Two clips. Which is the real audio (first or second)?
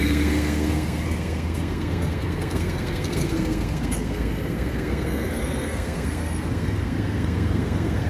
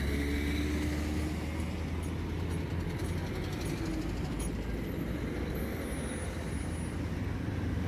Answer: second